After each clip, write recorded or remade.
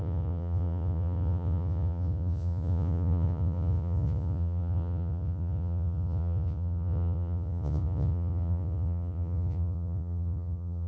remade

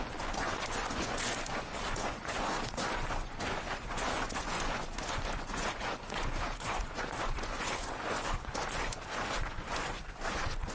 remade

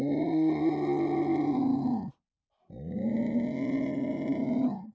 recorded